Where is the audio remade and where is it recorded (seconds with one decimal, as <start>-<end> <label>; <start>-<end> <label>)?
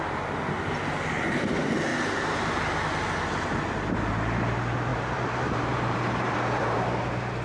0.0-1.9 recorded; 1.9-2.5 remade; 2.5-4.9 recorded; 4.9-7.0 remade; 7.0-7.4 recorded